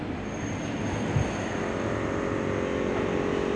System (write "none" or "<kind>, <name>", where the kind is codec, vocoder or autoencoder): none